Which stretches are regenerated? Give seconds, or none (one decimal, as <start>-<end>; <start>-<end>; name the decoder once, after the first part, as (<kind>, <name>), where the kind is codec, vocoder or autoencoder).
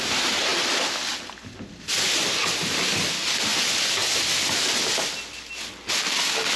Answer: none